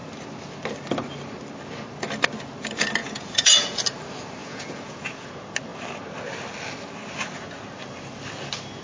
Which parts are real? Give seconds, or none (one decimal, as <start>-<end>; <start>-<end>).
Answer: 0.0-3.0; 3.8-4.4; 5.3-8.8